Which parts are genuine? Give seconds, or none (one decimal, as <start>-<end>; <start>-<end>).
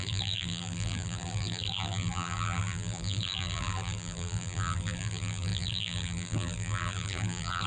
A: none